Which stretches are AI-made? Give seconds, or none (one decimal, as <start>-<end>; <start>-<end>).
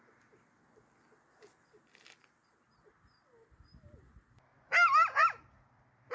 none